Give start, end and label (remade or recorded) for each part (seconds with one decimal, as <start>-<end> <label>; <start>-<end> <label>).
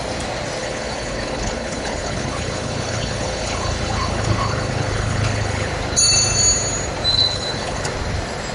0.0-0.6 recorded; 0.6-5.7 remade; 5.7-7.1 recorded; 7.1-7.8 remade; 7.8-8.5 recorded